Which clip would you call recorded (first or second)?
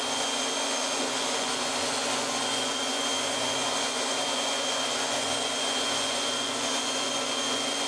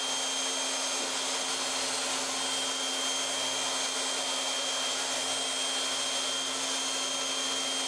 second